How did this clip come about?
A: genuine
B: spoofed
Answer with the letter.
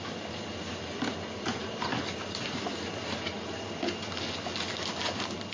A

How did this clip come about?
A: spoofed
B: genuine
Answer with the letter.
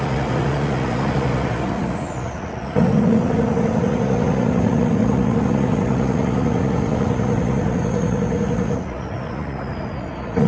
A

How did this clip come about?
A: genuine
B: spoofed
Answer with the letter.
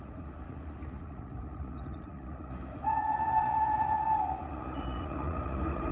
B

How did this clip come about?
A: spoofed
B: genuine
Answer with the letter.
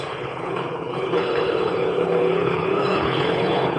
A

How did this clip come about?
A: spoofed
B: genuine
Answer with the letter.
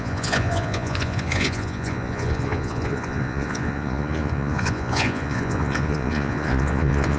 A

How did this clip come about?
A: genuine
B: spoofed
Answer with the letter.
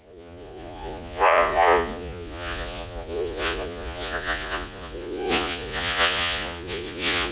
B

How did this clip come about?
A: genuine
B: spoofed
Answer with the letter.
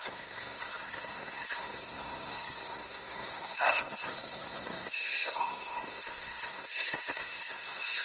B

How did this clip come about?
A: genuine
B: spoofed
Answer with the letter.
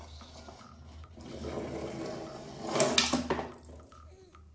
A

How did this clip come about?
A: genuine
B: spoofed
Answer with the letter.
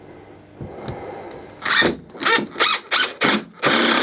A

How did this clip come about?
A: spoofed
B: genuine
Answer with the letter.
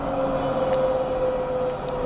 B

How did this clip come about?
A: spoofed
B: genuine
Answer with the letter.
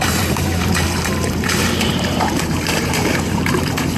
A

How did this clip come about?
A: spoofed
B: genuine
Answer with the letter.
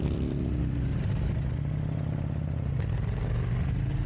B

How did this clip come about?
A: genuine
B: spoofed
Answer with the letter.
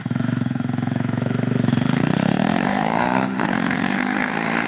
B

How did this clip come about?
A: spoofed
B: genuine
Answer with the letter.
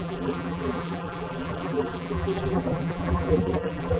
A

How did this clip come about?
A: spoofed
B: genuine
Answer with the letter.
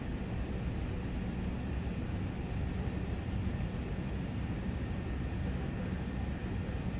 B